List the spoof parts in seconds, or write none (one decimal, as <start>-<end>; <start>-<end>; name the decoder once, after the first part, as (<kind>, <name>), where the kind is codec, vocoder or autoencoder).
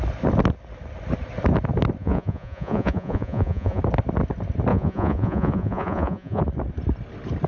2.0-3.8 (vocoder, Vocos); 4.7-6.4